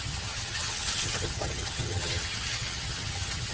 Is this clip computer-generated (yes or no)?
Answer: yes